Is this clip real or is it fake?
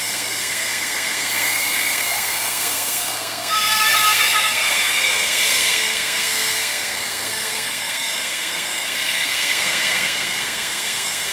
fake